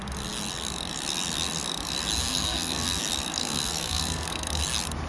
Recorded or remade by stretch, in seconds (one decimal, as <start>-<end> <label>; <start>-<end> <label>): 0.0-2.2 recorded; 2.2-3.0 remade; 3.0-3.4 recorded; 3.4-4.6 remade; 4.6-5.1 recorded